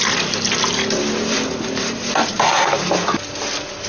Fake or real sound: real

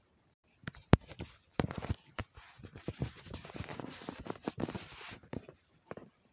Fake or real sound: fake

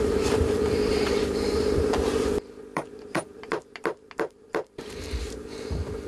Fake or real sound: fake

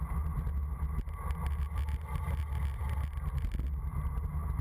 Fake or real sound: real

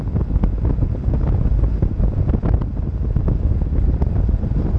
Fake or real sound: real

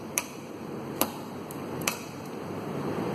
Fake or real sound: fake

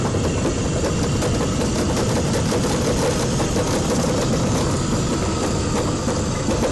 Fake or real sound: real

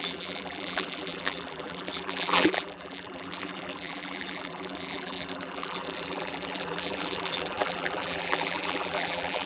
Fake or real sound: fake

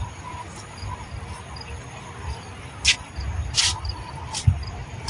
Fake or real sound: fake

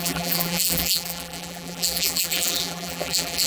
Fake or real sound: fake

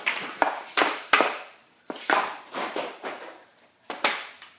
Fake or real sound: fake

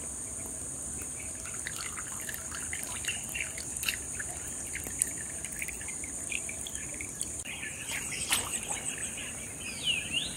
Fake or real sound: fake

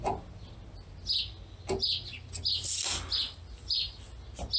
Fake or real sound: real